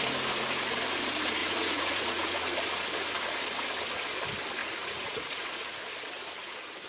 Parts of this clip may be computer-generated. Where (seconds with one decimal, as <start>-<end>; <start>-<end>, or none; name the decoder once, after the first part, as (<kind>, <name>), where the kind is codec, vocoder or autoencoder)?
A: 1.4-2.4 (vocoder, Vocos); 4.6-5.5